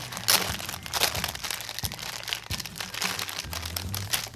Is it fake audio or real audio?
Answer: real